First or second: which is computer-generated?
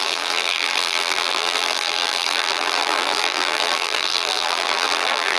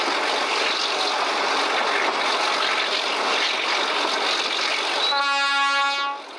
first